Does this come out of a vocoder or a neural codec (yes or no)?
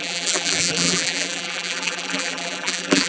yes